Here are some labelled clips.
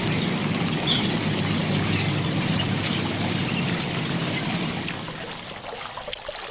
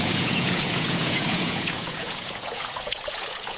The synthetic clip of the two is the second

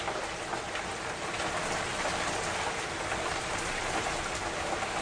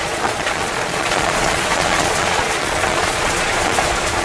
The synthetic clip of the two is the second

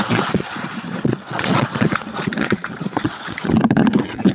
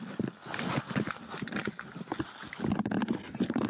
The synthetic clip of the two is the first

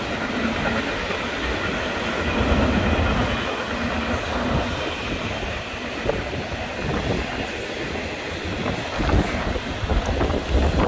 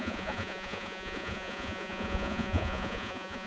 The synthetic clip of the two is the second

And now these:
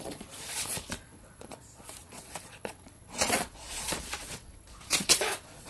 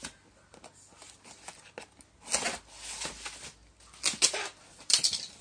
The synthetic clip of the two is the first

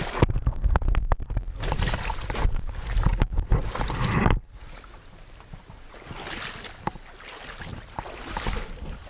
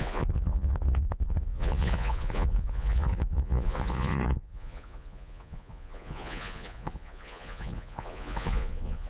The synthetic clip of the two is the second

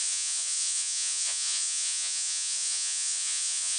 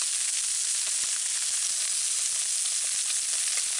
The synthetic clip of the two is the first